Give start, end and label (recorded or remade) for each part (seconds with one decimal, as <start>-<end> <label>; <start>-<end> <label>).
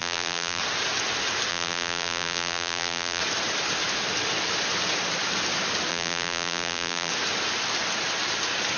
0.0-0.6 remade; 0.6-1.5 recorded; 1.5-3.2 remade; 3.2-5.9 recorded; 5.9-7.1 remade; 7.1-8.8 recorded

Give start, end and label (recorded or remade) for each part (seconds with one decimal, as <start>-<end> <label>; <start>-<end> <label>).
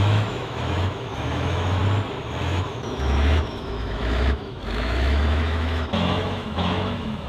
0.0-1.8 remade; 1.8-2.4 recorded; 2.4-7.3 remade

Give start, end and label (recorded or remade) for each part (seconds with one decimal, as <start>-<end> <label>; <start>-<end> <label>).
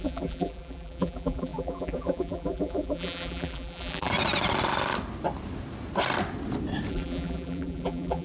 0.0-4.1 remade; 4.1-6.9 recorded; 6.9-8.2 remade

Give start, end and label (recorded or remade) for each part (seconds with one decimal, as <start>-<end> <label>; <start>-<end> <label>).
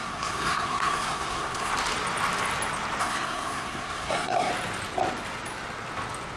0.0-1.7 remade; 1.7-3.0 recorded; 3.0-4.5 remade; 4.5-6.4 recorded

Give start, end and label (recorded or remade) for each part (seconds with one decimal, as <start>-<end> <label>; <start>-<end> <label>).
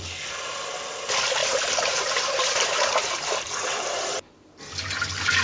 0.0-1.4 recorded; 1.4-4.6 remade; 4.6-5.4 recorded